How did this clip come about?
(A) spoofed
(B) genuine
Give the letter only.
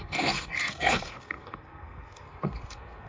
A